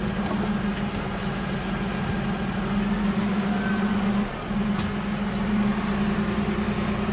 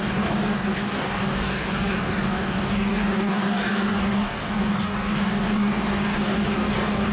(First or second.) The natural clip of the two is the first